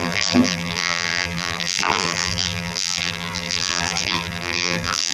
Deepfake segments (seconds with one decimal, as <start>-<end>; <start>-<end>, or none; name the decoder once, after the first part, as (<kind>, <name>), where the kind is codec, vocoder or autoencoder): 0.0-5.1 (vocoder, BigVGAN v2)